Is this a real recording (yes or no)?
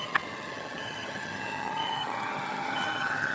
no